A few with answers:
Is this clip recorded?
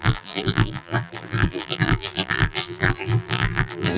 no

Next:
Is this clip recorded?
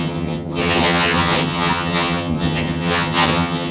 no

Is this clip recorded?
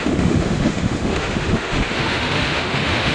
no